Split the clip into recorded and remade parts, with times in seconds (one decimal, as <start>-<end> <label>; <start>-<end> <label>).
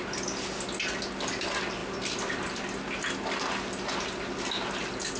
0.0-5.2 recorded